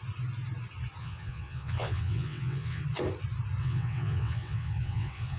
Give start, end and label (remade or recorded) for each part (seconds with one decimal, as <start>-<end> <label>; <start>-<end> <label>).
0.0-1.0 recorded; 1.0-2.8 remade; 2.8-3.6 recorded; 3.6-5.4 remade